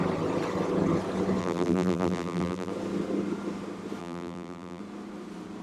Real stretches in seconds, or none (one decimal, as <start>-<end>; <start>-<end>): 0.0-1.4; 2.7-4.0; 4.8-5.6